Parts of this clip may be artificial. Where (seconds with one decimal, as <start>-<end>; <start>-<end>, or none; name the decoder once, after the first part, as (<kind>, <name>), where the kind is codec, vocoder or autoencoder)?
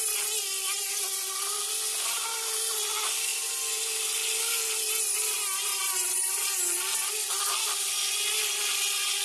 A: none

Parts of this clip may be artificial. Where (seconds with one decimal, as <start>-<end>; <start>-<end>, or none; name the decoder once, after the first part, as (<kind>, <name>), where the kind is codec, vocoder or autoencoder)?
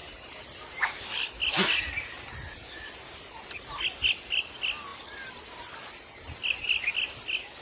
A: none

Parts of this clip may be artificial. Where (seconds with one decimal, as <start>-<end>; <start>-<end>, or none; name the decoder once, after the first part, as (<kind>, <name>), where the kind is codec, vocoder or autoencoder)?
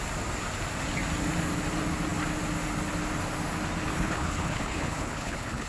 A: 3.9-5.7 (codec, HILCodec)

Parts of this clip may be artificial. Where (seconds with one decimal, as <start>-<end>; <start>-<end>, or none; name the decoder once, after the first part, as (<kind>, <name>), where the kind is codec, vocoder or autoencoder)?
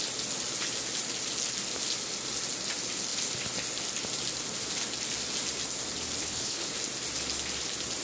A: 6.2-6.7 (codec, HILCodec)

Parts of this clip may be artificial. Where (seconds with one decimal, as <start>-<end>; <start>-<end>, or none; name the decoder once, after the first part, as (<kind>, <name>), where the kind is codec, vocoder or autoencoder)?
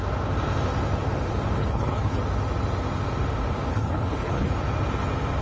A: 1.6-2.2 (codec, HILCodec); 3.7-4.5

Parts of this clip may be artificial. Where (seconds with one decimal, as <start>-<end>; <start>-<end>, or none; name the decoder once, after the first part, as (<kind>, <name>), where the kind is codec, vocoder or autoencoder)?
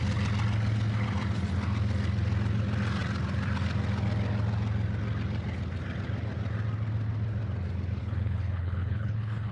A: 8.0-9.5 (codec, HILCodec)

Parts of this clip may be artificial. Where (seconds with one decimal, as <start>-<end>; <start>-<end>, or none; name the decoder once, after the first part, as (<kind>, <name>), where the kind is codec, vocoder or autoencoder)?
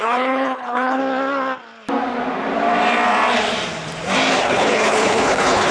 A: 0.0-1.0 (codec, HILCodec); 4.4-5.7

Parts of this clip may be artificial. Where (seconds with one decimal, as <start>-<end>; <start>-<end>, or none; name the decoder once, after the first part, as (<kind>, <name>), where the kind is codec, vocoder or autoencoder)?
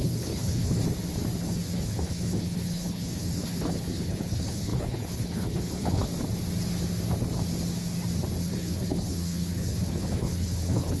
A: 0.0-0.8 (codec, HILCodec); 1.4-6.1; 8.4-11.0